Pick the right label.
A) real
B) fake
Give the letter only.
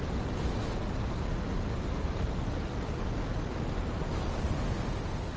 A